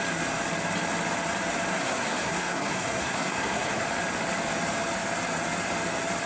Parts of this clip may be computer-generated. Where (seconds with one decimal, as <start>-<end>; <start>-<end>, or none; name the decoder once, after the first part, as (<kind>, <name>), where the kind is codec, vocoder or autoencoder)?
1.7-3.8 (codec, SNAC)